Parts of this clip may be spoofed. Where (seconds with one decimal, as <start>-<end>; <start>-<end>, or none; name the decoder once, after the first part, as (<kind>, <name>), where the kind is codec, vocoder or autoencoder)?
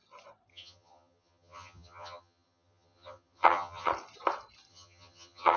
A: 0.5-3.9 (vocoder, HiFi-GAN); 4.7-5.6